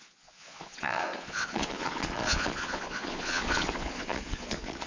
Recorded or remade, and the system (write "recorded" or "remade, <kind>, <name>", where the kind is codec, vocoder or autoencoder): remade, vocoder, Vocos